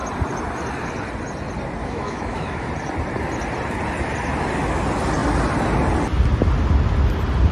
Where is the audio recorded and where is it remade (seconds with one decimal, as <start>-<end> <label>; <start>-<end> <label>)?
0.0-1.8 recorded; 1.8-2.7 remade; 2.7-7.5 recorded